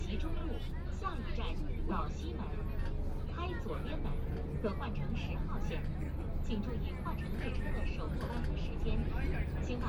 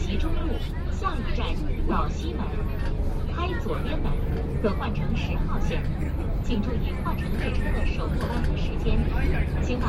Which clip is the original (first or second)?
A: first